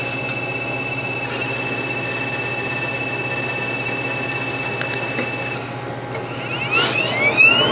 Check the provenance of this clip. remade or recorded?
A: recorded